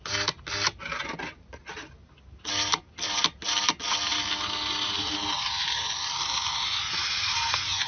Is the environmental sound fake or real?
real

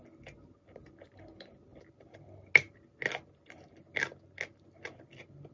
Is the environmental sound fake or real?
real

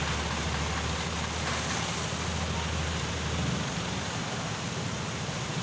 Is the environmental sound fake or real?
real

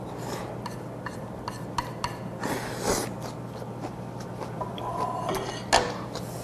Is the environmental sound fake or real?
real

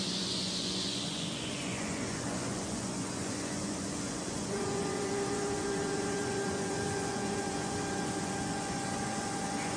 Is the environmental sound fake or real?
fake